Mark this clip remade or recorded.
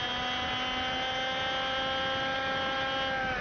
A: recorded